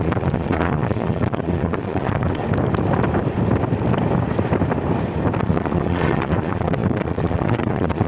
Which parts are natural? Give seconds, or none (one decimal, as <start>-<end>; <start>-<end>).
2.4-5.4